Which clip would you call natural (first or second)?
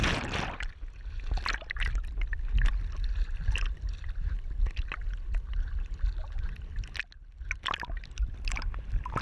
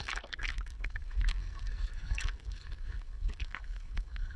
first